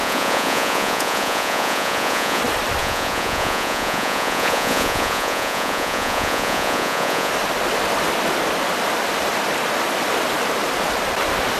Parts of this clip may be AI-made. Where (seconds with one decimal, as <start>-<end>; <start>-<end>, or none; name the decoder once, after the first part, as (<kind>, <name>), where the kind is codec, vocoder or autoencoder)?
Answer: 0.0-2.4 (vocoder, Vocos); 2.8-7.3